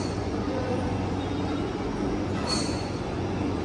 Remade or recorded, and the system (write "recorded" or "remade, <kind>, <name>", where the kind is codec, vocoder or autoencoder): remade, vocoder, Vocos